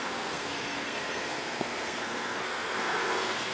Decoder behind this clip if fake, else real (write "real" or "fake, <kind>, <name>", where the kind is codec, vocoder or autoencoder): fake, codec, SNAC